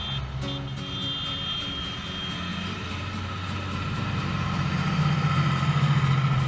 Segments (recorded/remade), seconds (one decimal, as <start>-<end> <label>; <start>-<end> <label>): 0.0-1.0 recorded; 1.0-2.0 remade; 2.0-2.5 recorded; 2.5-5.1 remade; 5.1-6.5 recorded